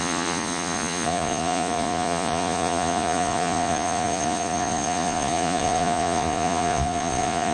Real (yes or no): no